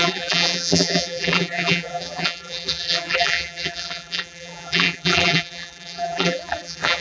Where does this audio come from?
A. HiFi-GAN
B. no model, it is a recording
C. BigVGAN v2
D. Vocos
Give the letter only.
C